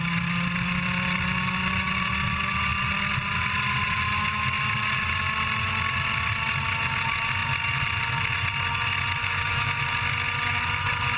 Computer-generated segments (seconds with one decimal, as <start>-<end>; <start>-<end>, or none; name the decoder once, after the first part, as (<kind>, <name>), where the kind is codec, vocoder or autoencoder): 9.2-9.8 (autoencoder, DAC-VAE)